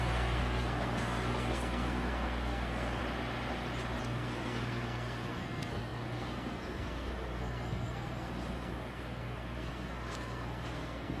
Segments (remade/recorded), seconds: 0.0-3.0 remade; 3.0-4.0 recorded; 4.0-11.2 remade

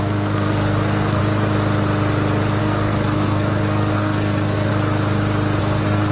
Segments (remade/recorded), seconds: 0.0-1.2 remade; 1.2-2.6 recorded; 2.6-4.7 remade; 4.7-5.6 recorded; 5.6-6.1 remade

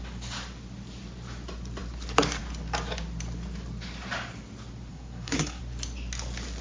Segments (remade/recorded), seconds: 0.0-4.9 recorded; 4.9-5.6 remade; 5.6-6.6 recorded